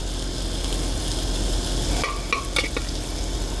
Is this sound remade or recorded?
recorded